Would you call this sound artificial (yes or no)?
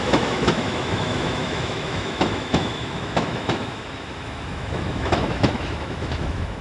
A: yes